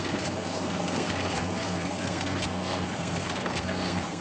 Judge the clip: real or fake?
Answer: fake